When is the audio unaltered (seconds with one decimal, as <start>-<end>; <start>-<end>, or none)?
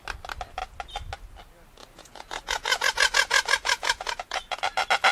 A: 0.0-1.8; 4.6-5.1